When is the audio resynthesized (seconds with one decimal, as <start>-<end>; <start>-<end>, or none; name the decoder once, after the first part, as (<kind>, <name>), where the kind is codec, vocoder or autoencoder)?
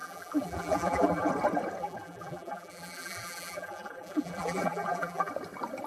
0.0-1.3 (vocoder, BigVGAN v2); 1.8-5.3